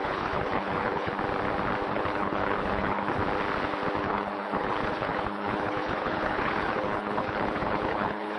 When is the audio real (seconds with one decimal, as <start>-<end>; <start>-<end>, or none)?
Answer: 1.1-1.9; 3.2-4.0